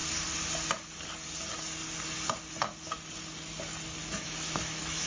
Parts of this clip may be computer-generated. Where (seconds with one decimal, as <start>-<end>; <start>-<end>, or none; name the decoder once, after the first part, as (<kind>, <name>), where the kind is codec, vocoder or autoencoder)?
4.0-5.1 (autoencoder, DAC-VAE)